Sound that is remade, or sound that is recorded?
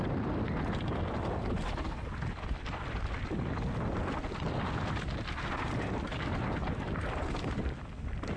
recorded